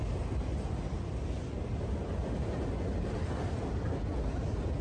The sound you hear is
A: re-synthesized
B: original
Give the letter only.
B